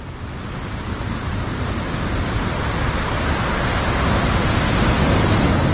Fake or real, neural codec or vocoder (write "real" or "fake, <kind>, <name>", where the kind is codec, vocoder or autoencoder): real